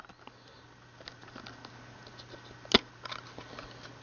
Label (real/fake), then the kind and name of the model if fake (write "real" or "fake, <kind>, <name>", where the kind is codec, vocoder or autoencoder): real